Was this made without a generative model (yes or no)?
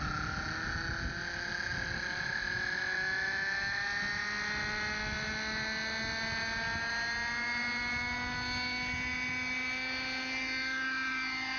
yes